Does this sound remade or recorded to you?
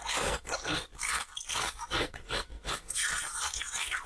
remade